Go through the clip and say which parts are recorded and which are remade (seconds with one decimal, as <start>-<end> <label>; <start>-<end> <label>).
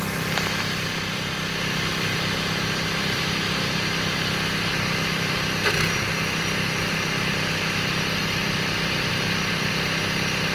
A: 0.0-8.4 recorded; 8.4-9.7 remade; 9.7-10.5 recorded